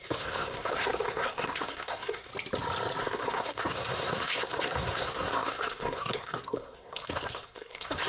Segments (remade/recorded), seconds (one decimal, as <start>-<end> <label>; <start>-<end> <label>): 0.0-2.3 remade; 2.3-3.0 recorded; 3.0-8.1 remade